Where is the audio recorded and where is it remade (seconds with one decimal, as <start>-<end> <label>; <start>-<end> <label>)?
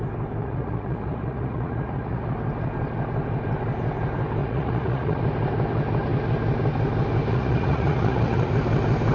0.0-0.4 recorded; 0.4-2.2 remade; 2.2-4.4 recorded; 4.4-5.2 remade; 5.2-7.3 recorded; 7.3-8.5 remade; 8.5-9.1 recorded